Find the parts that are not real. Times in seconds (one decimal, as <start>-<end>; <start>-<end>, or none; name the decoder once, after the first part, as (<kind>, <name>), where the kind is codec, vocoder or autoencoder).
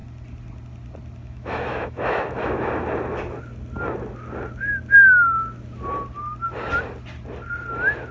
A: 1.2-2.7 (autoencoder, DAC-VAE)